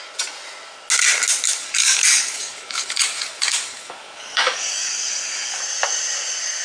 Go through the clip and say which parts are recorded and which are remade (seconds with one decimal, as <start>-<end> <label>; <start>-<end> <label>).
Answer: 0.0-1.6 recorded; 1.6-5.6 remade; 5.6-6.6 recorded